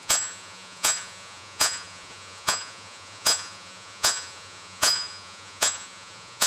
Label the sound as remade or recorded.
remade